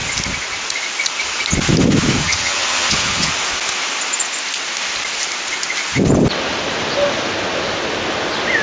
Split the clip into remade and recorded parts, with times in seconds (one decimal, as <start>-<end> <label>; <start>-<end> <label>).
0.0-2.2 recorded; 2.2-3.3 remade; 3.3-8.6 recorded